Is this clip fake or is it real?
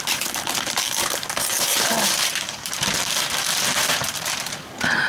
fake